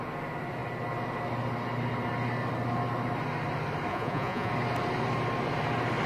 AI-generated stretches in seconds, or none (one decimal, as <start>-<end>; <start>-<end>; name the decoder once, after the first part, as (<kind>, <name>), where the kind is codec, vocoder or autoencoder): 3.9-4.5 (vocoder, Vocos)